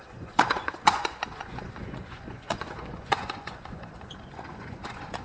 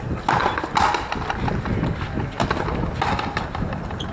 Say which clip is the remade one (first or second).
first